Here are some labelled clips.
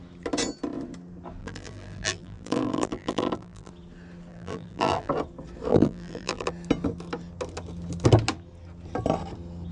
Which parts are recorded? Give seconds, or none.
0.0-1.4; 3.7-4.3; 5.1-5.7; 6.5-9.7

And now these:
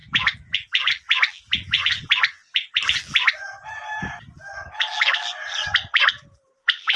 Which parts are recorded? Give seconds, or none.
4.0-4.5

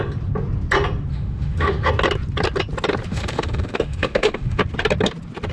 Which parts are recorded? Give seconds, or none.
0.0-1.1; 1.9-3.1; 4.6-5.5